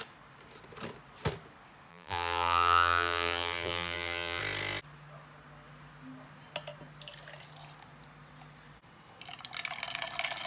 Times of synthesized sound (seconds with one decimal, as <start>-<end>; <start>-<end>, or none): 1.9-4.4

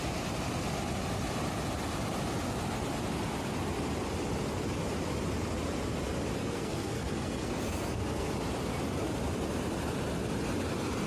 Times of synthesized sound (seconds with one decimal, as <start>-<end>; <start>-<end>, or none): 6.4-8.3